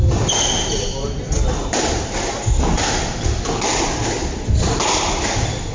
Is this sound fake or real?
real